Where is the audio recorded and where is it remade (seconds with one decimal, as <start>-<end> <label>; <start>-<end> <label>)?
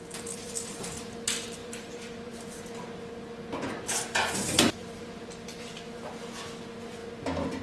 0.0-7.6 recorded